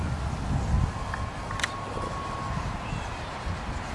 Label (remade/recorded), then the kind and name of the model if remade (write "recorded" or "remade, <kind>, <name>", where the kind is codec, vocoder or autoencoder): recorded